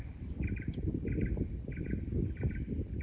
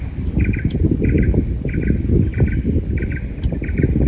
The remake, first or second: first